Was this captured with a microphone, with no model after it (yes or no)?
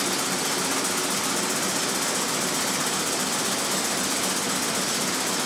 yes